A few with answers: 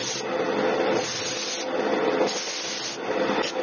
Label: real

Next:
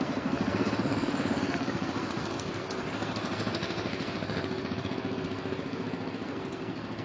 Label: fake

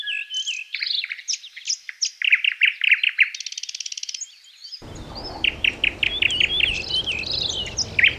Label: real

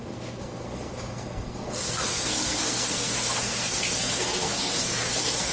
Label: fake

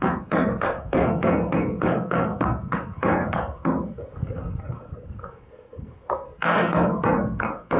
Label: fake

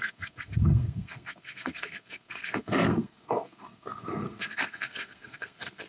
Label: fake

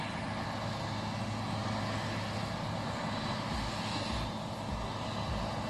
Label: real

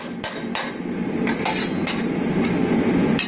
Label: real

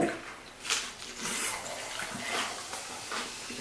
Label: real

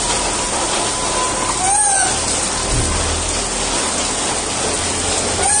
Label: real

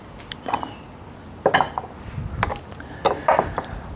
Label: real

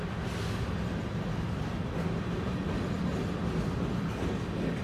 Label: real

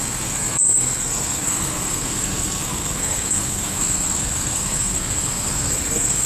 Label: fake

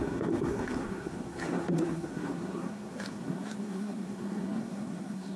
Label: fake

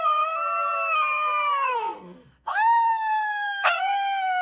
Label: fake